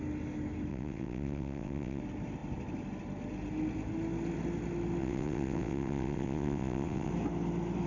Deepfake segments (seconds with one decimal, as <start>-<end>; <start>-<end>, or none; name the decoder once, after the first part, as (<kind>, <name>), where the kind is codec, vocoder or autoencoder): 0.7-2.0 (vocoder, WaveNeXt); 5.0-7.1